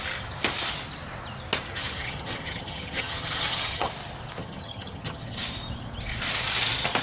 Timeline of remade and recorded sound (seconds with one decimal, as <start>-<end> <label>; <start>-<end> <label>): 0.0-1.7 recorded; 1.7-3.9 remade; 3.9-4.4 recorded; 4.4-5.4 remade; 5.4-7.0 recorded